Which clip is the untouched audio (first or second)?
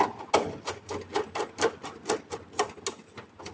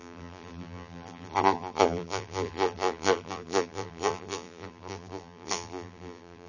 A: first